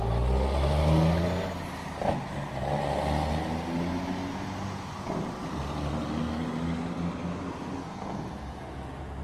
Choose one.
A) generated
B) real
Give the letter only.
B